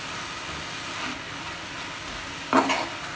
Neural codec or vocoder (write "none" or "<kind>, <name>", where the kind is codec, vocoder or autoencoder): none